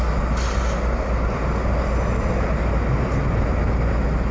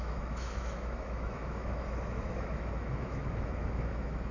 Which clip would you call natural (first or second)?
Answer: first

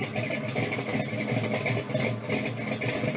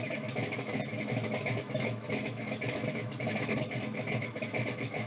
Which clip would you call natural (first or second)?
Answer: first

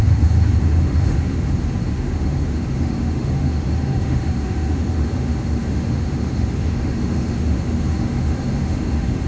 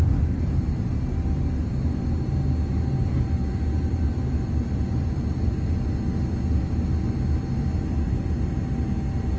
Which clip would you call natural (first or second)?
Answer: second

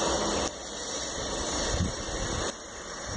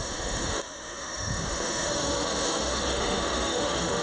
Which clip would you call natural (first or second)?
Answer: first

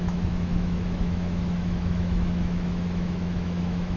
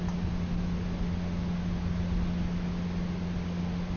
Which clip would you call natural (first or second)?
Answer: second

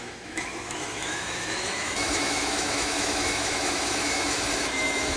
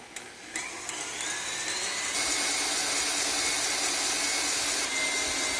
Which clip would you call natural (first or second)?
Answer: second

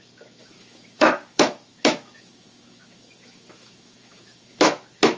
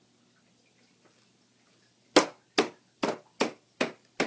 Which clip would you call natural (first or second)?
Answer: second